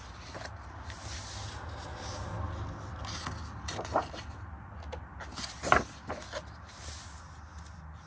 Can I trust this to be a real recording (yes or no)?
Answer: yes